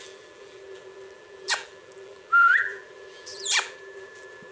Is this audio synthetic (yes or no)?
yes